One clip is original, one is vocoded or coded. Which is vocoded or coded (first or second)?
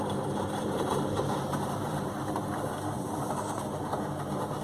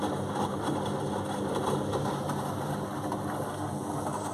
first